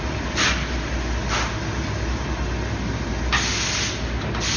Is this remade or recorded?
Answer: recorded